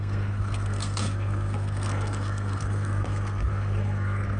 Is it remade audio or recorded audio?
remade